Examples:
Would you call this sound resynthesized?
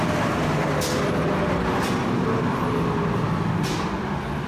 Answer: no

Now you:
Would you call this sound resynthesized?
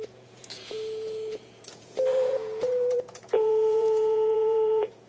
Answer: yes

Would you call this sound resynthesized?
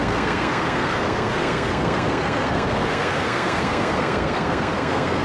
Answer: yes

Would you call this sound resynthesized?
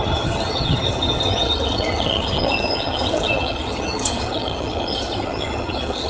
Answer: yes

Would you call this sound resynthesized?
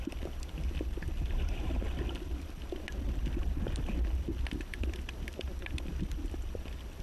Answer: no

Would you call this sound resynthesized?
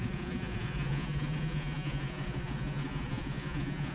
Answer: yes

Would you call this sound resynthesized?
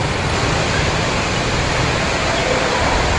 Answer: no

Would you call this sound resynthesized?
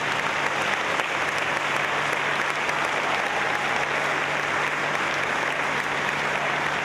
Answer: no